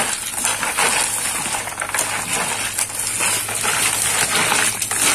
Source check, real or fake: real